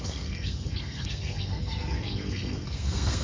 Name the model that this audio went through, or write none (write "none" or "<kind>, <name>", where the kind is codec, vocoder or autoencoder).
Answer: codec, SNAC